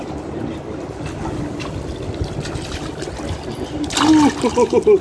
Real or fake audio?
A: real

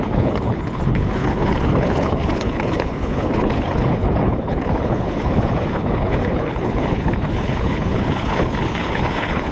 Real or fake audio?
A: fake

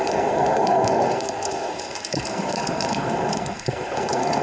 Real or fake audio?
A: fake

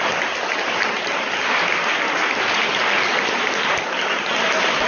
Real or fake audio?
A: real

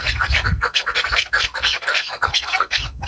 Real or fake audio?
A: fake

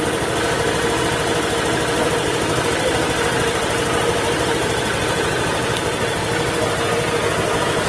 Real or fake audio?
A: real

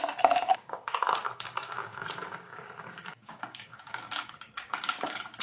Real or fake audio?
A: fake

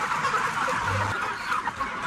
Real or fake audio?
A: real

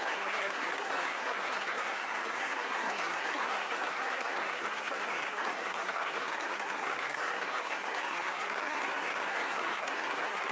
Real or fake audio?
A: fake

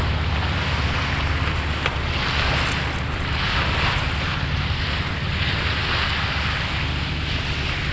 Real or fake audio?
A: real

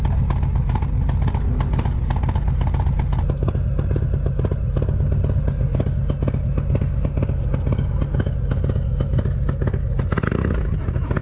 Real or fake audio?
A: real